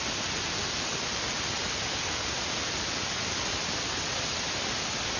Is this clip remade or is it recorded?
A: recorded